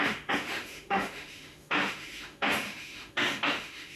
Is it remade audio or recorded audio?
remade